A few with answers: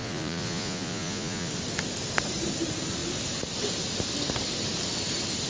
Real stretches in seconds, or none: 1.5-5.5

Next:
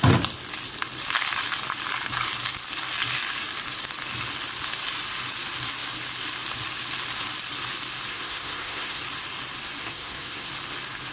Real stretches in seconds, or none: 0.0-8.1; 9.0-9.8; 10.5-11.1

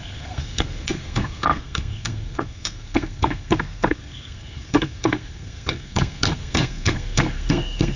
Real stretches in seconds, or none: none

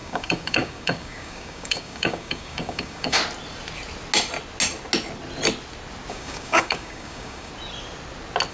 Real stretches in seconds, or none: 3.2-6.1; 7.5-8.5

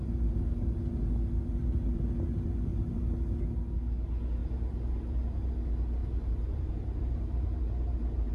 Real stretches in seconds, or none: 0.0-4.4; 5.5-6.0

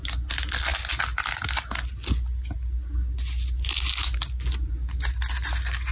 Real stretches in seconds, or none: 0.0-5.9

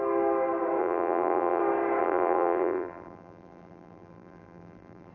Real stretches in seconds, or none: 0.0-0.8; 1.6-2.0